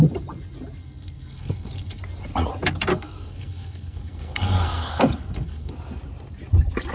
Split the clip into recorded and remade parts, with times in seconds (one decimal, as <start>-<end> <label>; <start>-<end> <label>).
0.0-0.8 recorded; 0.8-2.0 remade; 2.0-2.9 recorded; 2.9-5.7 remade; 5.7-6.9 recorded